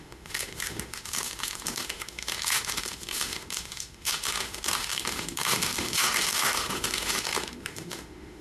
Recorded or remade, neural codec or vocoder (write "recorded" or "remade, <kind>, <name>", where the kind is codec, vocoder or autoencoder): remade, autoencoder, DAC-VAE